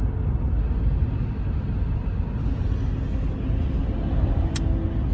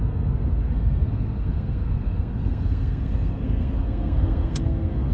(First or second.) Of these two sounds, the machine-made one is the second